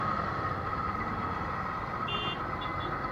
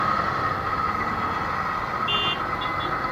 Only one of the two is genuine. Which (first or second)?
second